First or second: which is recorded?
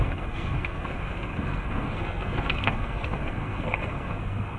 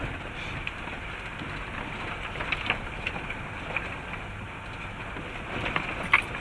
second